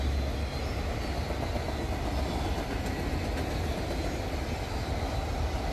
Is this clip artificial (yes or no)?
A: no